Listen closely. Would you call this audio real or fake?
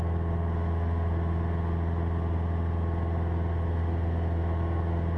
real